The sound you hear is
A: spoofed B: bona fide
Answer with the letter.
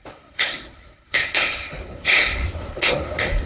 A